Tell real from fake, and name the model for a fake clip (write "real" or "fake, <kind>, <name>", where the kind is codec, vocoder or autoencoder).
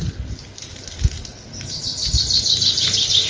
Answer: real